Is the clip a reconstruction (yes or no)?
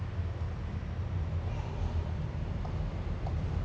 no